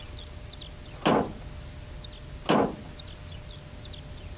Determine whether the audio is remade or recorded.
recorded